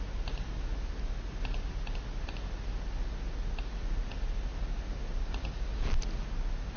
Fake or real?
real